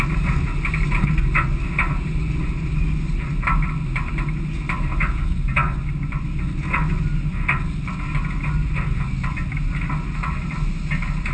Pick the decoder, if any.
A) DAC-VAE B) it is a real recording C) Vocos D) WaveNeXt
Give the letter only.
B